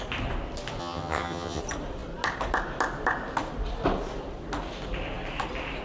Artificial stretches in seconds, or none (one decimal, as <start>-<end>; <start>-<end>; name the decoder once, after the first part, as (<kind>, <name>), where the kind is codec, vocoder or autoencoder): 0.8-1.6 (vocoder, HiFi-GAN)